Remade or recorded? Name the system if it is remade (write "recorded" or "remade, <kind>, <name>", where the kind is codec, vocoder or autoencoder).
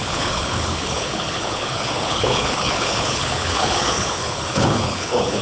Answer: remade, codec, HILCodec